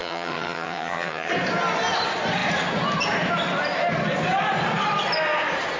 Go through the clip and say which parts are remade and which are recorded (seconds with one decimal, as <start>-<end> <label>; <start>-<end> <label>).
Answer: 0.0-1.3 remade; 1.3-5.8 recorded